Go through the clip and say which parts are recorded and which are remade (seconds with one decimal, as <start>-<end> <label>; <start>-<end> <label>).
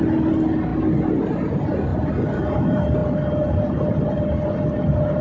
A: 0.0-5.2 recorded